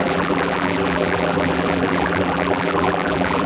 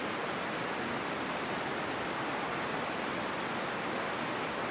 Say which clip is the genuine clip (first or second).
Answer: second